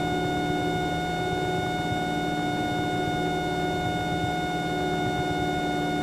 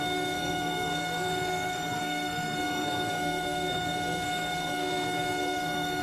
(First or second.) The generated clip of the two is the second